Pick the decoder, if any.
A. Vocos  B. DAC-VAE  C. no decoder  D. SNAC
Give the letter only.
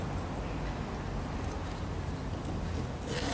C